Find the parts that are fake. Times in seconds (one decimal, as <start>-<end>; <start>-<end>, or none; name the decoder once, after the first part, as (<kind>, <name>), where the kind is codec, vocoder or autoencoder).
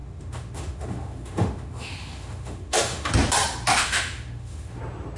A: 0.0-3.1 (autoencoder, DAC-VAE); 3.7-4.8